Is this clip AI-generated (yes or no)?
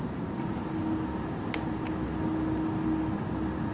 no